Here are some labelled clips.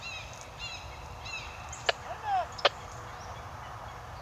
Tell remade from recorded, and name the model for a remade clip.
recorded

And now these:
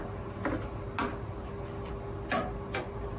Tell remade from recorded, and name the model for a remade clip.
recorded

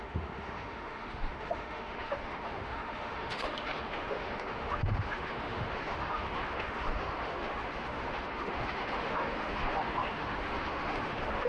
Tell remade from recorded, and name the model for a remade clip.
remade, autoencoder, DAC-VAE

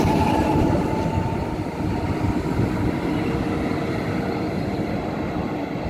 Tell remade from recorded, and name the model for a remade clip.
remade, vocoder, BigVGAN v2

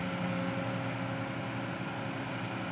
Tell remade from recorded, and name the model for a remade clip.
recorded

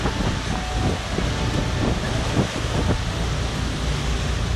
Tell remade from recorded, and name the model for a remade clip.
recorded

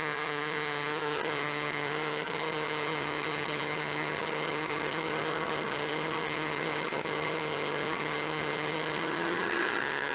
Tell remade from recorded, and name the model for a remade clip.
remade, vocoder, HiFi-GAN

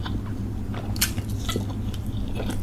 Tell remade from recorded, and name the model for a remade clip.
recorded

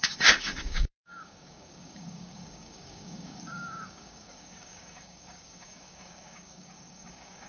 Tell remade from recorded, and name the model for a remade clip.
remade, codec, DAC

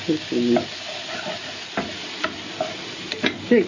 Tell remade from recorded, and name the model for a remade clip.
recorded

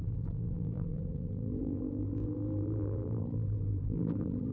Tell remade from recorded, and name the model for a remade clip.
remade, vocoder, BigVGAN v2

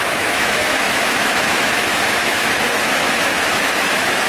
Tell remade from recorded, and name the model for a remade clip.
remade, autoencoder, DAC-VAE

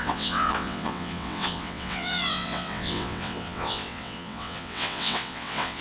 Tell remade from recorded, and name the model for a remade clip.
remade, vocoder, WaveNeXt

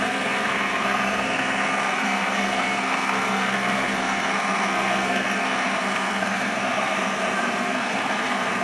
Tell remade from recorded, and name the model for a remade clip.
remade, codec, SNAC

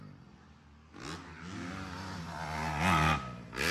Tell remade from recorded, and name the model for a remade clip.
recorded